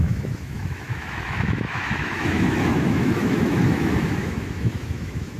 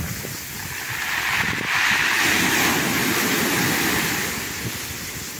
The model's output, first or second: first